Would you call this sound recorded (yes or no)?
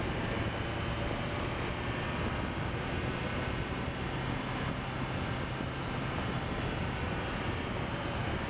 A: yes